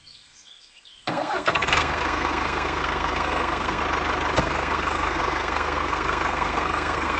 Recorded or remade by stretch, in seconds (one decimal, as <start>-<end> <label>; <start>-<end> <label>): 0.0-3.8 remade; 3.8-4.4 recorded; 4.4-7.2 remade